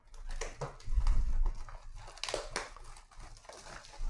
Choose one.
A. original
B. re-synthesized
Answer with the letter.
A